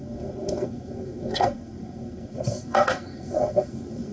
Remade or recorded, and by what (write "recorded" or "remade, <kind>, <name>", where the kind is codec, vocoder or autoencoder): remade, codec, SNAC